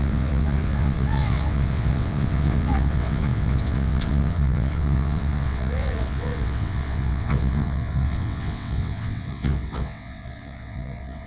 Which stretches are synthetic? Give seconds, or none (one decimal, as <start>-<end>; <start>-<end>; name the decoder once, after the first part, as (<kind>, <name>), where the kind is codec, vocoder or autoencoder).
0.0-11.3 (vocoder, WaveNeXt)